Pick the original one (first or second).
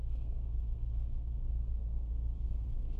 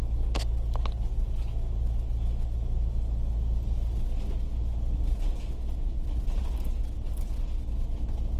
second